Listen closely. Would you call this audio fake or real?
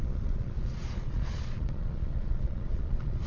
fake